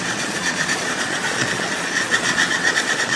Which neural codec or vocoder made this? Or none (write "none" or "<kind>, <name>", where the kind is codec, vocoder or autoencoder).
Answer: vocoder, Vocos